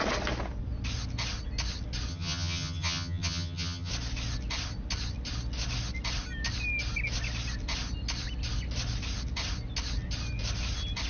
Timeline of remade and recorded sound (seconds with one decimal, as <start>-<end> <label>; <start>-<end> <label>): 0.0-2.1 recorded; 2.1-3.9 remade; 3.9-11.1 recorded